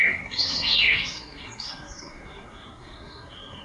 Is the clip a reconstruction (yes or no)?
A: yes